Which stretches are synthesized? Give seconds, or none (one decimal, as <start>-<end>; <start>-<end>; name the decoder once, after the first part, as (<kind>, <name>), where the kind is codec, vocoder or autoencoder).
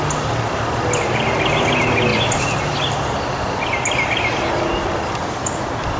none